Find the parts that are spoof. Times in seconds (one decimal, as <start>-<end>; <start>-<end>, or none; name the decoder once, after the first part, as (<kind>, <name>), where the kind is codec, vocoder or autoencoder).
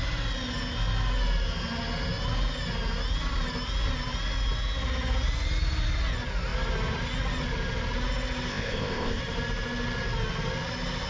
8.5-9.2 (codec, ZipCodec)